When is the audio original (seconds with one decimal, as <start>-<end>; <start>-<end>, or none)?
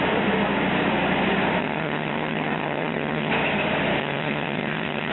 0.0-1.6; 3.3-4.0